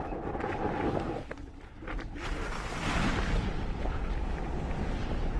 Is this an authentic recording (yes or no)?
yes